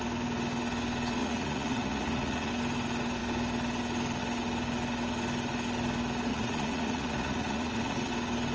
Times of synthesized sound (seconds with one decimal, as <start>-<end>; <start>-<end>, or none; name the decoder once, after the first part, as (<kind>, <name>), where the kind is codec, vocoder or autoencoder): 1.2-2.5 (vocoder, Vocos); 6.3-8.1